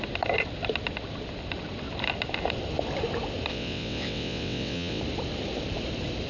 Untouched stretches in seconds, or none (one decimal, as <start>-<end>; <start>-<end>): 0.0-3.5; 5.0-6.3